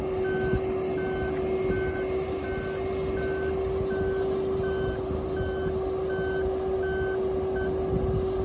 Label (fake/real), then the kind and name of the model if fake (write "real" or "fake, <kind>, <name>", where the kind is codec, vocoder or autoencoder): real